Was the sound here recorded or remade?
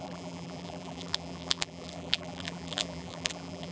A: remade